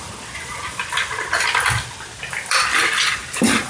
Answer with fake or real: fake